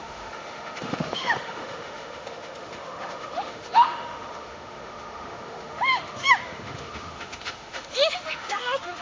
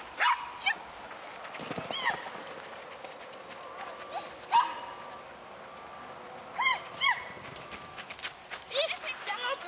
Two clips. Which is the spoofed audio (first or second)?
first